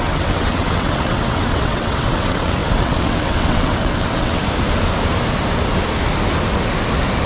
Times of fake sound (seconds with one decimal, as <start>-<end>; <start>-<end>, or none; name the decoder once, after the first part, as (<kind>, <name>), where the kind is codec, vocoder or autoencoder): 0.0-4.4 (vocoder, WaveNeXt)